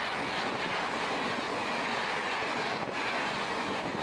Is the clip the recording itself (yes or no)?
no